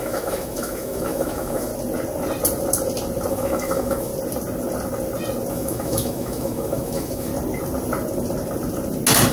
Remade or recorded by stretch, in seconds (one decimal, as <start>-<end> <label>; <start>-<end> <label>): 0.0-1.7 remade; 1.7-3.3 recorded; 3.3-4.1 remade; 4.1-5.5 recorded; 5.5-7.3 remade; 7.3-9.3 recorded